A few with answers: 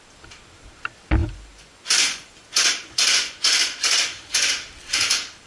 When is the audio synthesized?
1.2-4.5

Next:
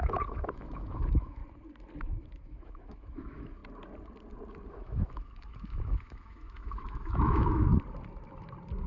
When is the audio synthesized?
0.0-1.4; 2.0-3.6; 4.7-7.7

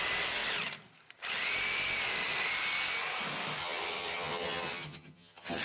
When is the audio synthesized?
3.6-5.6

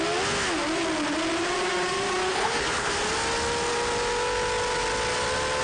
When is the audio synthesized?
2.3-2.9

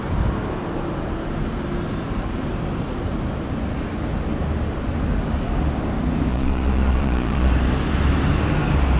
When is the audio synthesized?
6.3-7.5

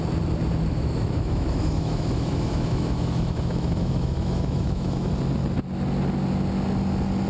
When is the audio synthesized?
0.7-5.1

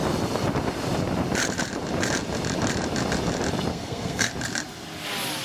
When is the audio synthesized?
3.7-4.3